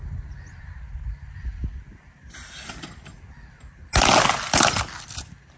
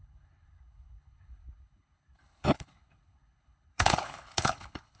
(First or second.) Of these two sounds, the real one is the first